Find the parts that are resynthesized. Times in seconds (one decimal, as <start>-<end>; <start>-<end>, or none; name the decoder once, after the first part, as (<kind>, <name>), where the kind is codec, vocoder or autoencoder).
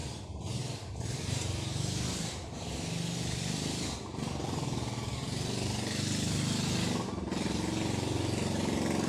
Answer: none